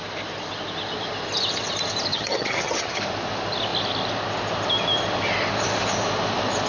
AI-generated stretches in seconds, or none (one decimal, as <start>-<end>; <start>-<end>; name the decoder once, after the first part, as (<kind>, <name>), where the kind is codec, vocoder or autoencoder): 2.1-3.0 (vocoder, HiFi-GAN)